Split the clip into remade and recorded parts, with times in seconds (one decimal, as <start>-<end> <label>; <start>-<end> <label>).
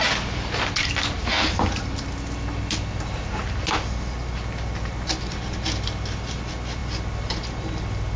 0.0-8.2 recorded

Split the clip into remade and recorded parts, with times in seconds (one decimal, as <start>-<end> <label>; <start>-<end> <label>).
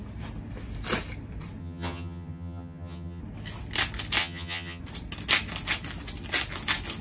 0.0-1.6 recorded; 1.6-3.2 remade; 3.2-4.2 recorded; 4.2-4.8 remade; 4.8-7.0 recorded